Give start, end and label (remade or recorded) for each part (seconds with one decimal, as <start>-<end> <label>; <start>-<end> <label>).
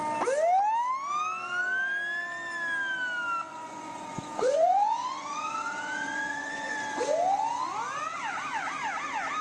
0.0-3.5 recorded; 3.5-7.0 remade; 7.0-9.4 recorded